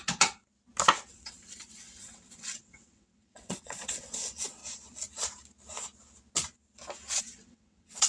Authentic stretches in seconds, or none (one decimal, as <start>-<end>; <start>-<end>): 0.4-1.1; 4.6-7.2

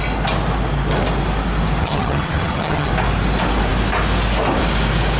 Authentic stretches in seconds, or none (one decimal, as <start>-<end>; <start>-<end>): 0.0-1.8; 2.9-5.2

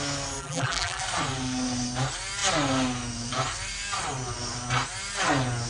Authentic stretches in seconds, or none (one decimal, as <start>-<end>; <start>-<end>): 0.0-0.4; 1.0-5.7

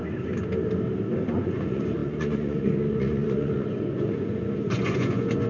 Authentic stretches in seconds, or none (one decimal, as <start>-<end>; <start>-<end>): 0.0-1.3